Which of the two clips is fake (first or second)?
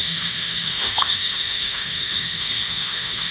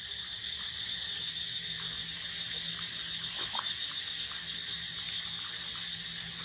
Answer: first